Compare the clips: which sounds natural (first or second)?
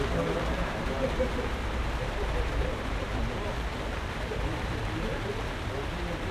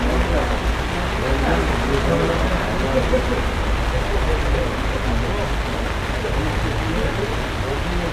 second